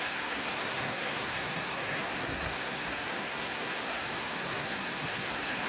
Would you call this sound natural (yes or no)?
no